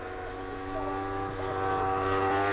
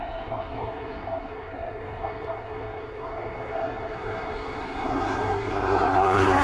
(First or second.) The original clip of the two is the first